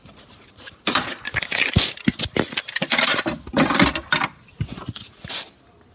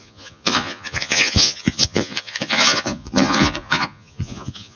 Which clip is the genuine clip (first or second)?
first